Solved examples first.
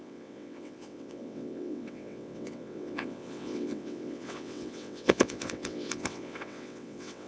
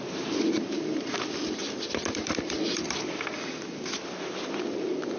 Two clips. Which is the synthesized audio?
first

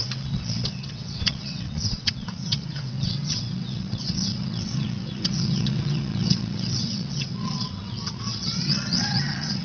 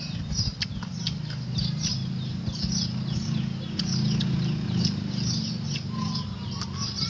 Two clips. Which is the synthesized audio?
first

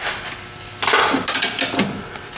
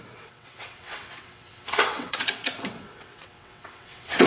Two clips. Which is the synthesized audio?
second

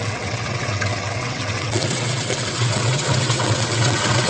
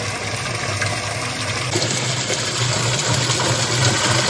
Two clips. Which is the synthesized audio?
first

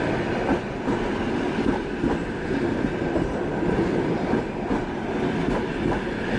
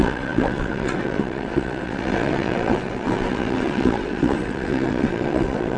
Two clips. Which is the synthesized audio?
second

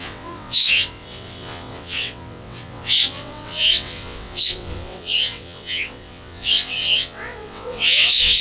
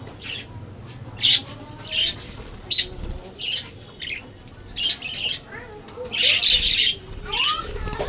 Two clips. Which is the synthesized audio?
first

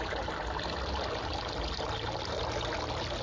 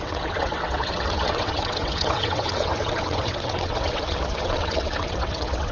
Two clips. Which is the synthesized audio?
second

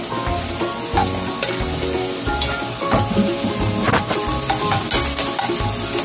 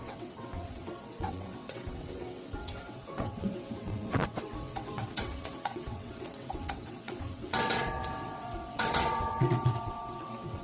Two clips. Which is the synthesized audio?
second